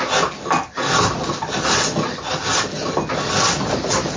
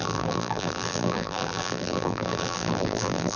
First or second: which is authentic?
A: first